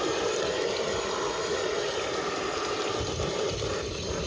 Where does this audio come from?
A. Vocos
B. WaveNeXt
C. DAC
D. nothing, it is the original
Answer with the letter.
D